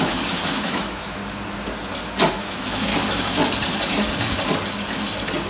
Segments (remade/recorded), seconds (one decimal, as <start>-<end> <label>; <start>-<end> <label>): 0.0-1.2 remade; 1.2-2.3 recorded; 2.3-2.9 remade; 2.9-5.5 recorded